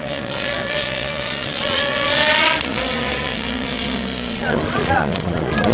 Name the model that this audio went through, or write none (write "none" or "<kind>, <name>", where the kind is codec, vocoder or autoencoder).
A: vocoder, Vocos